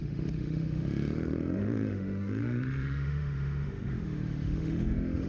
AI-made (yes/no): yes